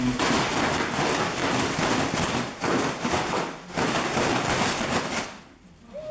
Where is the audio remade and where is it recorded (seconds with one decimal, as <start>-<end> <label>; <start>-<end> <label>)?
0.0-6.1 recorded